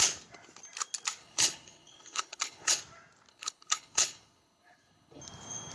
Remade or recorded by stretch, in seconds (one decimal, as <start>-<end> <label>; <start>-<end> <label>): 0.0-1.2 recorded; 1.2-2.8 remade; 2.8-3.3 recorded; 3.3-5.2 remade; 5.2-5.7 recorded